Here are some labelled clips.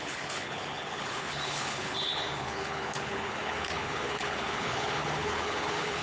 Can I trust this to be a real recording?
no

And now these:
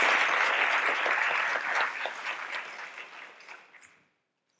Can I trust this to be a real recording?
yes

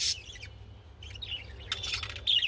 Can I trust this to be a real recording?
yes